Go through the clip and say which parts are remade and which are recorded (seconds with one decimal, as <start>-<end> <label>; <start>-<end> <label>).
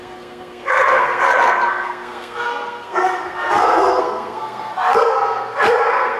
0.0-6.2 remade